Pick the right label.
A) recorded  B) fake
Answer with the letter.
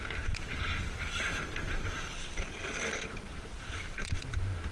A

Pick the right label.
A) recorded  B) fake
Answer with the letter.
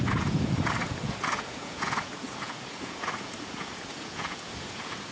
B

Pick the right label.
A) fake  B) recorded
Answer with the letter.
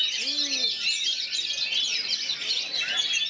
B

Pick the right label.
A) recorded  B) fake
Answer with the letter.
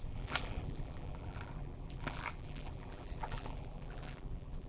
B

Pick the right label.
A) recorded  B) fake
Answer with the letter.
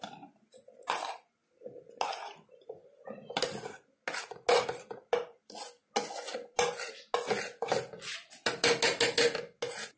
A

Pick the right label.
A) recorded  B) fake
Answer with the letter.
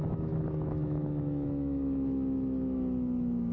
B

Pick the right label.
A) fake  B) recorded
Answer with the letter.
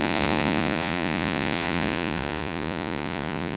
A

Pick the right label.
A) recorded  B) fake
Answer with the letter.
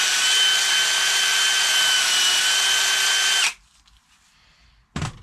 A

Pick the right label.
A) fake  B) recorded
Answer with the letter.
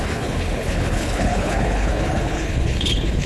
A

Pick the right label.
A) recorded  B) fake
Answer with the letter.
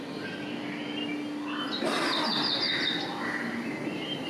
A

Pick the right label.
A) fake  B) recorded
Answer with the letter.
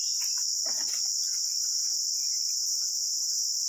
B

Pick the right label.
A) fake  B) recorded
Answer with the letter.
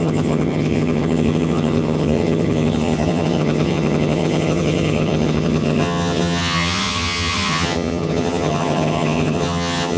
A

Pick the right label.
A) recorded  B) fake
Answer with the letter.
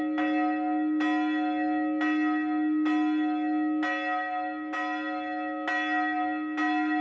A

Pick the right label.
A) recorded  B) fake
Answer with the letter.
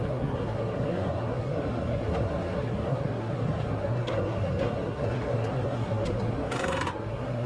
B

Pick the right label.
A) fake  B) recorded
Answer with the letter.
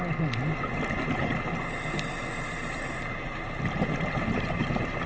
B